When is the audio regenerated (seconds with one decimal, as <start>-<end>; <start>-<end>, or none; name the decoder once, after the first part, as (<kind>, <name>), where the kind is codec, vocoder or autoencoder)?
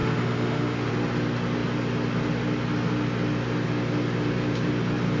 0.0-0.9 (autoencoder, DAC-VAE)